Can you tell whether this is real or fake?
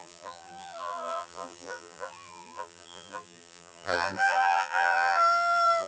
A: fake